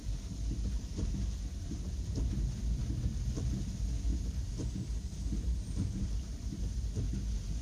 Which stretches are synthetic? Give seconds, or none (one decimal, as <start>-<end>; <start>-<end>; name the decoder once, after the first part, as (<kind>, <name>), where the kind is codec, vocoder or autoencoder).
0.0-2.2 (vocoder, BigVGAN v2); 4.1-6.6